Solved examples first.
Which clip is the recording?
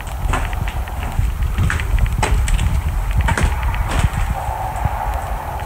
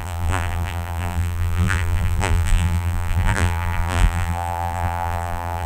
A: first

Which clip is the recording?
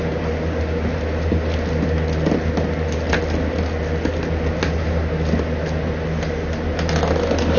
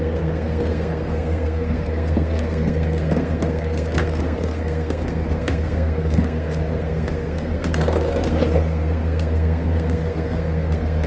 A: first